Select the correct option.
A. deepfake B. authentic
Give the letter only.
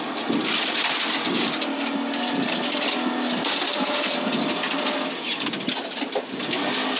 B